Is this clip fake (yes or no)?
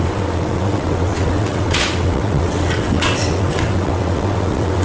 yes